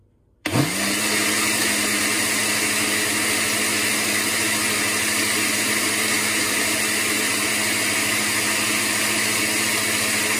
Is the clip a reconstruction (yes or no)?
no